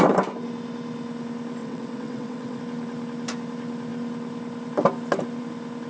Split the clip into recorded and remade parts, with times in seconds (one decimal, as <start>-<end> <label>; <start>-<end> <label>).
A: 0.0-1.6 recorded; 1.6-2.6 remade; 2.6-5.9 recorded